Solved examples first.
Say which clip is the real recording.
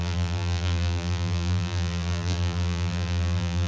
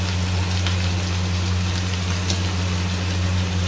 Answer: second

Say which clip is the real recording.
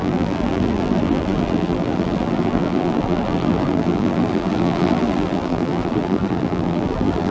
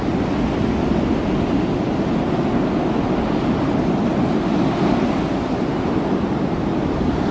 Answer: second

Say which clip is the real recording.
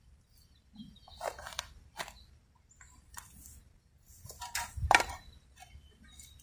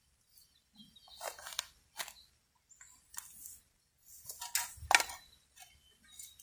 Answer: second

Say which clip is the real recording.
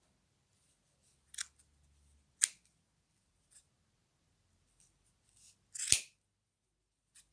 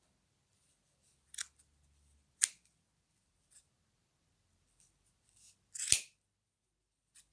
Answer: first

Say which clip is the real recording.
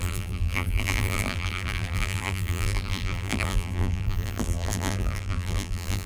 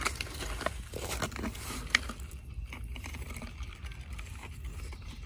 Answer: second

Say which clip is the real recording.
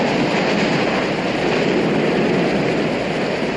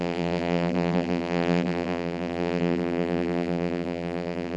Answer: first